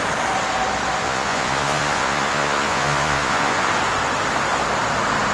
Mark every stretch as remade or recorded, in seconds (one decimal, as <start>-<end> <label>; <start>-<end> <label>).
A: 0.0-1.0 recorded; 1.0-3.7 remade; 3.7-5.3 recorded

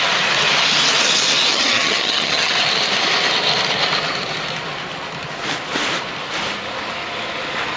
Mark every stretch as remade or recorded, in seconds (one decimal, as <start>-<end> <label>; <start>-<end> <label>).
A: 0.0-1.5 recorded; 1.5-2.5 remade; 2.5-7.8 recorded